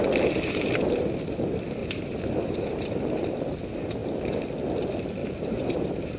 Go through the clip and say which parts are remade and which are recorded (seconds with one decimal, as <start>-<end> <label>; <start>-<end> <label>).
0.0-1.8 recorded; 1.8-3.4 remade; 3.4-5.2 recorded; 5.2-6.2 remade